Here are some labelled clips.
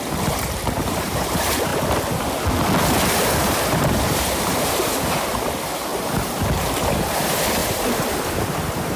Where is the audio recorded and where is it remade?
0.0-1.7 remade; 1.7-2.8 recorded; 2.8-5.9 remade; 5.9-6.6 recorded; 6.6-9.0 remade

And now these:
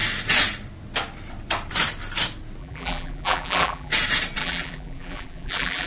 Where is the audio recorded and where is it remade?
0.0-2.6 recorded; 2.6-3.9 remade; 3.9-4.4 recorded; 4.4-5.9 remade

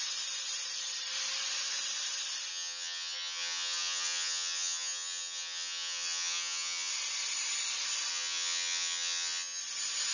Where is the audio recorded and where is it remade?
0.0-2.5 recorded; 2.5-6.9 remade; 6.9-8.1 recorded; 8.1-9.6 remade; 9.6-10.1 recorded

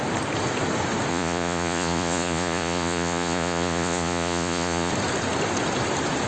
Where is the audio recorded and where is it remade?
0.0-1.1 recorded; 1.1-4.9 remade; 4.9-6.3 recorded

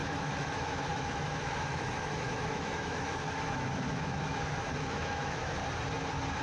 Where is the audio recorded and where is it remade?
0.0-5.6 remade; 5.6-6.4 recorded

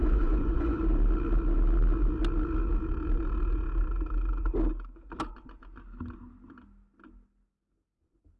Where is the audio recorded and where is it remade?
0.0-0.8 remade; 0.8-8.4 recorded

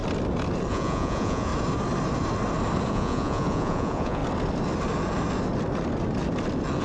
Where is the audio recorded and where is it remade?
0.0-0.7 recorded; 0.7-1.5 remade; 1.5-2.9 recorded; 2.9-4.2 remade; 4.2-6.8 recorded